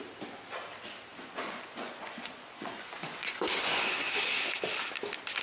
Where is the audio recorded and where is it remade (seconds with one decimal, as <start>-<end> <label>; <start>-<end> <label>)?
0.0-1.1 recorded; 1.1-4.3 remade; 4.3-5.4 recorded